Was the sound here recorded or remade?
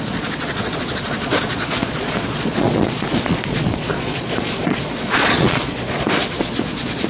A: remade